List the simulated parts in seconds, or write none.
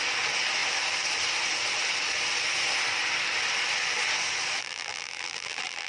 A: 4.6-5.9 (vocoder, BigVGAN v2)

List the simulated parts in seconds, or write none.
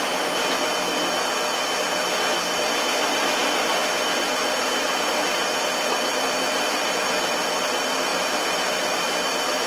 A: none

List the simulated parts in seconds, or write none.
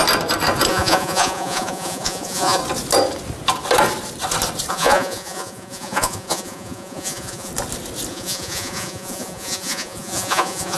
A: 0.7-2.6 (vocoder, Vocos); 4.7-7.5; 8.1-10.8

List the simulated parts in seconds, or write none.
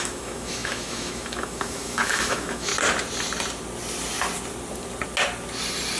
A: 0.0-2.7 (autoencoder, DAC-VAE)